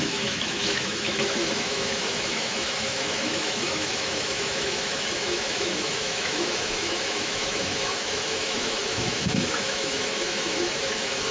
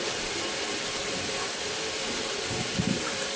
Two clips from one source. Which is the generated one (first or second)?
first